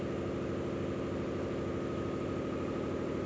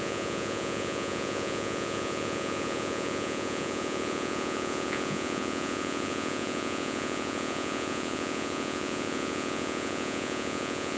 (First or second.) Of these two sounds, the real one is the first